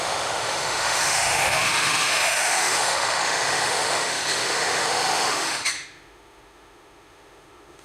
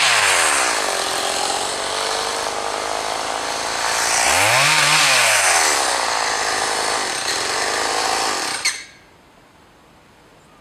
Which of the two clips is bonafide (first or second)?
second